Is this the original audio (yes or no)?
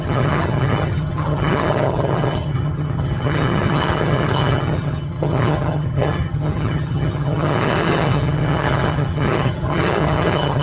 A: no